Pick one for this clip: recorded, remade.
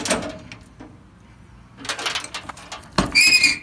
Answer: recorded